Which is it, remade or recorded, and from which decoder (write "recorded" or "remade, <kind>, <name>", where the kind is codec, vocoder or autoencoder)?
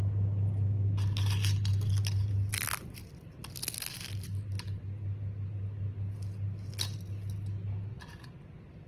recorded